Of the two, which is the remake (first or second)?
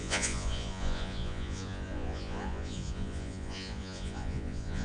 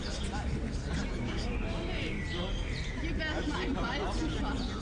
first